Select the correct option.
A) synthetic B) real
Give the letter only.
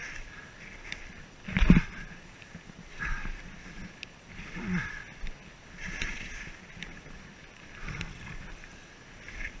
B